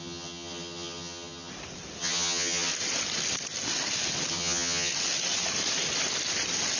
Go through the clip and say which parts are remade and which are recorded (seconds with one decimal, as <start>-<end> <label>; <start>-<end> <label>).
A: 0.0-1.5 remade; 1.5-2.0 recorded; 2.0-2.7 remade; 2.7-4.3 recorded; 4.3-4.9 remade; 4.9-6.8 recorded